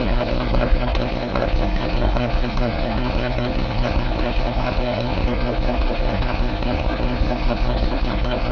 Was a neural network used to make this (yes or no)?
yes